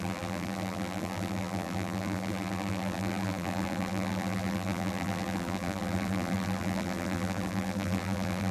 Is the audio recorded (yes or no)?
no